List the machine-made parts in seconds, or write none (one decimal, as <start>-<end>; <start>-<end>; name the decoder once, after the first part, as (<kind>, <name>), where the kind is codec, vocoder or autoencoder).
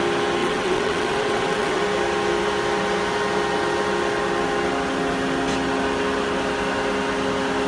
0.4-1.8 (vocoder, WaveNeXt)